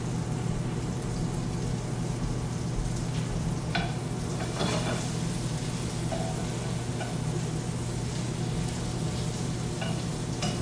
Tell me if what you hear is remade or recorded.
recorded